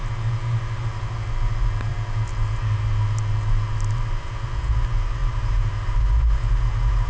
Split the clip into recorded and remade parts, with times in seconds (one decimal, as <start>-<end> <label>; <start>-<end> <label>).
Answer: 0.0-7.1 recorded